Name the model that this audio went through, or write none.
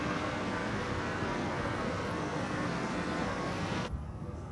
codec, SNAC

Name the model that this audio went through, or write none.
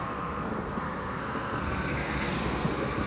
codec, SNAC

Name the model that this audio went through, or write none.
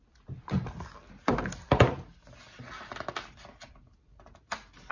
none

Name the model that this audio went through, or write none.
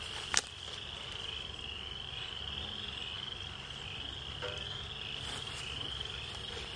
none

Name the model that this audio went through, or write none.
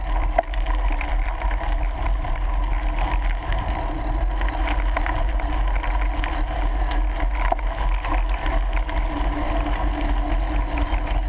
none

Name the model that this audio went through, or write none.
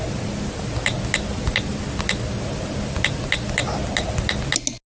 none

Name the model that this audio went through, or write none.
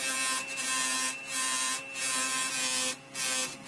none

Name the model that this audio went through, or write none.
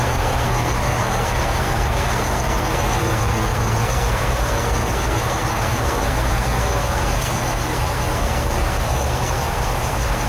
codec, SNAC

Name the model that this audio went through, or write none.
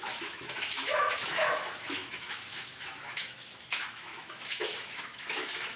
autoencoder, DAC-VAE